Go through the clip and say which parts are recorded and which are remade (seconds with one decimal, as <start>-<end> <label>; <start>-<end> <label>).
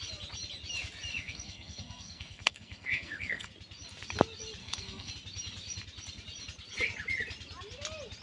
0.0-1.1 recorded; 1.1-3.5 remade; 3.5-4.6 recorded; 4.6-5.1 remade; 5.1-8.2 recorded